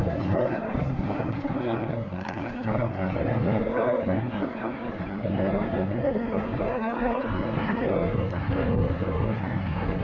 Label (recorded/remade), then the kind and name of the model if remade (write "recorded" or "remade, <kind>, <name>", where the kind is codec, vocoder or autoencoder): remade, codec, SNAC